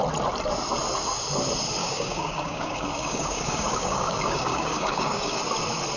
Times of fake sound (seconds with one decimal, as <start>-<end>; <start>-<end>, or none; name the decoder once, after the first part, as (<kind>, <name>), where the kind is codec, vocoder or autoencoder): 1.8-5.4 (codec, DAC)

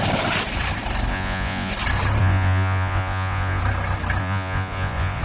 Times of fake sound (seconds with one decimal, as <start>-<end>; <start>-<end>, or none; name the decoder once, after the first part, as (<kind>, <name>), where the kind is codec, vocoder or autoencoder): 1.1-1.7 (vocoder, Vocos); 2.2-3.6; 4.2-5.2

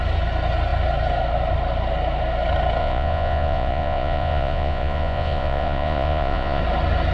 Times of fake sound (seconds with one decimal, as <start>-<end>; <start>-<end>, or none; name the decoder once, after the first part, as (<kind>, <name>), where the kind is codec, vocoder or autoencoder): 2.8-6.6 (vocoder, Vocos)

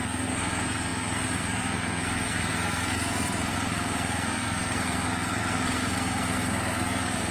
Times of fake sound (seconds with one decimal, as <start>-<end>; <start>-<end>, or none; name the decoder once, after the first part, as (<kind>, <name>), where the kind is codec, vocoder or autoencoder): 0.0-7.3 (codec, SNAC)

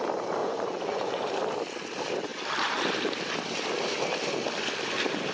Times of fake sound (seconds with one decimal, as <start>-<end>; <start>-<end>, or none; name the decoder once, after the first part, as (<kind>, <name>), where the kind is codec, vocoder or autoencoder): 0.4-1.3 (vocoder, Vocos)

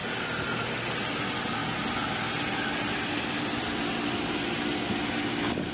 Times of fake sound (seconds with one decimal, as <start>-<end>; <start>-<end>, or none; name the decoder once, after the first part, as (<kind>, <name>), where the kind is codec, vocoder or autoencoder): none

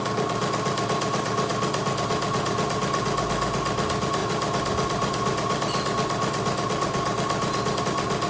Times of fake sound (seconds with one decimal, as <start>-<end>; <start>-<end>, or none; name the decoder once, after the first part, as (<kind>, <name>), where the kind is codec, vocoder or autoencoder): none